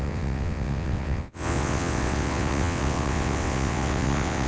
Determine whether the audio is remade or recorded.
remade